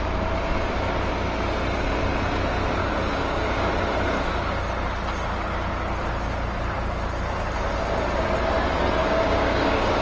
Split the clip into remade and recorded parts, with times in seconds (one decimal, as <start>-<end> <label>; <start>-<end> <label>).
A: 0.0-2.8 recorded; 2.8-3.7 remade; 3.7-9.0 recorded; 9.0-10.0 remade